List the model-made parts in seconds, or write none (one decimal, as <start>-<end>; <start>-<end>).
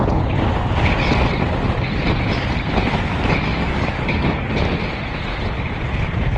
3.5-4.5